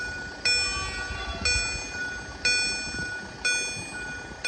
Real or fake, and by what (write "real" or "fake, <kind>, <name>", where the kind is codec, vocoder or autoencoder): real